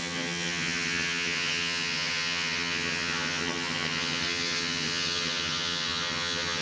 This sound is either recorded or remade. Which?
remade